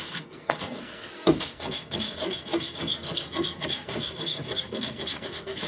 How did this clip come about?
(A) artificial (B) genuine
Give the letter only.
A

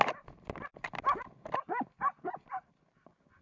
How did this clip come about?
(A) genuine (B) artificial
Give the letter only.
A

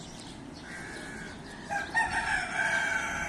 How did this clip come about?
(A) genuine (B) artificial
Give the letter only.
A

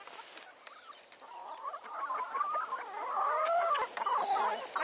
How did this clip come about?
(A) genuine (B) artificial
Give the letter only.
A